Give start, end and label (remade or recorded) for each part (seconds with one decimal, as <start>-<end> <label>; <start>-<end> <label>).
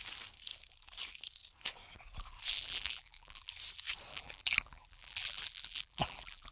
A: 0.0-2.5 recorded; 2.5-3.5 remade; 3.5-4.1 recorded; 4.1-6.5 remade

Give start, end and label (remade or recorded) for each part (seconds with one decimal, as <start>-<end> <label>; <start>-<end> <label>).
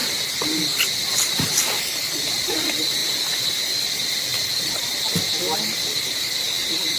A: 0.0-1.9 recorded; 1.9-3.0 remade; 3.0-3.5 recorded; 3.5-4.3 remade; 4.3-5.6 recorded; 5.6-7.0 remade